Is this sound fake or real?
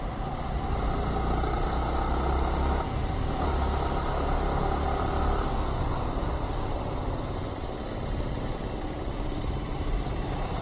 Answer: real